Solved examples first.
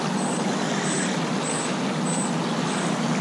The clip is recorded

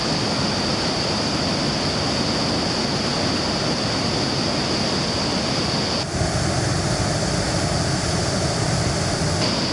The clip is recorded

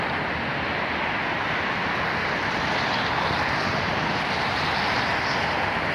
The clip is recorded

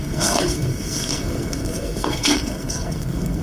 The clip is remade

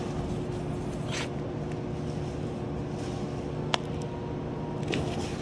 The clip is recorded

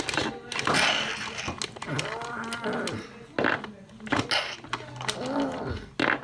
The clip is recorded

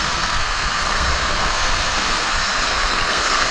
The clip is remade